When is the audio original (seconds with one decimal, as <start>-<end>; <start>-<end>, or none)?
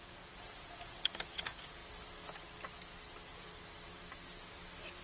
1.8-5.0